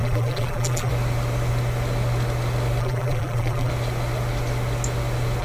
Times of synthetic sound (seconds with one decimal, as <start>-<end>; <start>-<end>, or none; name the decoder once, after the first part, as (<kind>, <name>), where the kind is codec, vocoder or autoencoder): 0.0-0.9 (vocoder, BigVGAN v2); 2.8-3.7